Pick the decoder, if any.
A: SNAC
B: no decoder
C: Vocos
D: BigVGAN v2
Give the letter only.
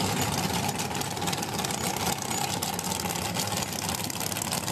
B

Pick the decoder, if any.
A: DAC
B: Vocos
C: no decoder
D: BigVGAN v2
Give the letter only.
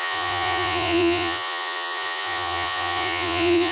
B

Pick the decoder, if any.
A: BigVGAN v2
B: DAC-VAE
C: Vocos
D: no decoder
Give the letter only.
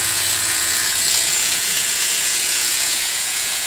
C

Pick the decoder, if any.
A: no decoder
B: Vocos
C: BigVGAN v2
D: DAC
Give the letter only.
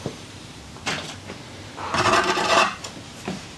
C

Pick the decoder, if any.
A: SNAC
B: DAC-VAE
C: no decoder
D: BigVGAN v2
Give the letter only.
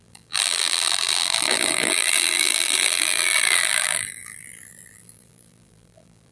D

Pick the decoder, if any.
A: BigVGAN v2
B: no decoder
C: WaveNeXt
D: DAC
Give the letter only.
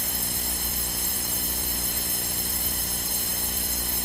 A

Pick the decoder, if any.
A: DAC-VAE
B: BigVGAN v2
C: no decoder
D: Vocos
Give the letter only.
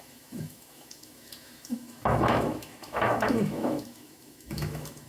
A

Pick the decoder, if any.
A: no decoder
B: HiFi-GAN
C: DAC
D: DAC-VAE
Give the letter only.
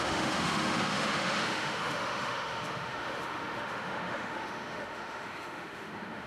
D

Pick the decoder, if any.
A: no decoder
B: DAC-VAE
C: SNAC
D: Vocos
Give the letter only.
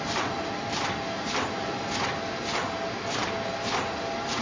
A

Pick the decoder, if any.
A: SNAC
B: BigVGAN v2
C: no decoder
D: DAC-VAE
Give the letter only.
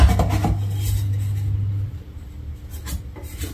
C